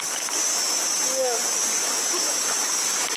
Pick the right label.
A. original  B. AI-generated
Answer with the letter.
A